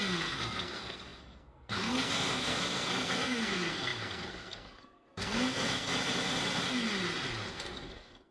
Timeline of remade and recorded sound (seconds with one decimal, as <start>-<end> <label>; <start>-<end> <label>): 0.0-5.9 remade; 5.9-7.5 recorded; 7.5-8.3 remade